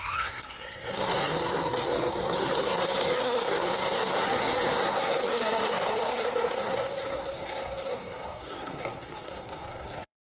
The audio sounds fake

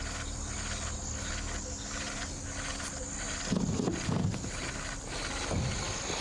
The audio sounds real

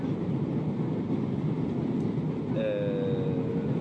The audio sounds real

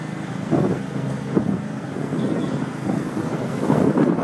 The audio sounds fake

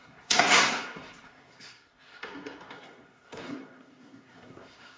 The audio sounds fake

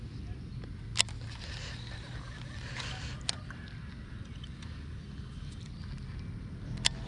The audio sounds real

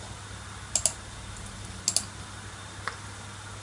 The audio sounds real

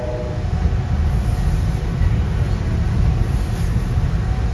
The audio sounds real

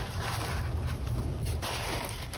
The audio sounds real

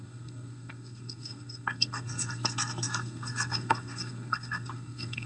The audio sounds fake